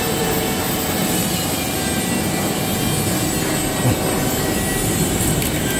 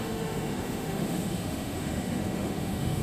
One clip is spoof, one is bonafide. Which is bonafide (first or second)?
first